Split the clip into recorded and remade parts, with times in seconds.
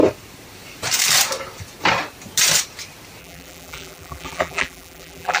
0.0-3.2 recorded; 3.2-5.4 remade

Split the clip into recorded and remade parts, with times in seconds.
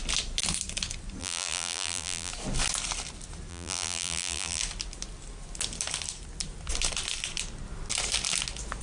0.0-1.2 recorded; 1.2-2.3 remade; 2.3-3.5 recorded; 3.5-4.6 remade; 4.6-8.8 recorded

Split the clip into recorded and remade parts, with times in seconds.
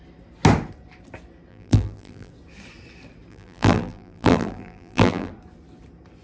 0.0-1.5 recorded; 1.5-2.3 remade; 2.3-3.3 recorded; 3.3-5.3 remade; 5.3-6.2 recorded